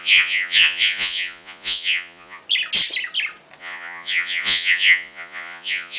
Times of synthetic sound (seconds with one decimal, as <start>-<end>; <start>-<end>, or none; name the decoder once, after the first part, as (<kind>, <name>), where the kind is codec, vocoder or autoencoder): 0.0-2.4 (vocoder, Vocos); 3.6-6.0